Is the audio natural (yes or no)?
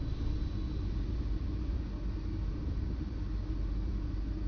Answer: yes